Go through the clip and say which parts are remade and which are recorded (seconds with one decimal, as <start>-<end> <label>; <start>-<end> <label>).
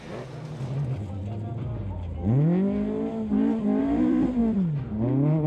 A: 0.0-0.5 remade; 0.5-3.8 recorded; 3.8-4.4 remade; 4.4-5.5 recorded